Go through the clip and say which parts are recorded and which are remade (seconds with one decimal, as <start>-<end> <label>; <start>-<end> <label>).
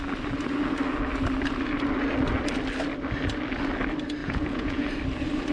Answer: 0.0-4.2 recorded; 4.2-4.9 remade; 4.9-5.5 recorded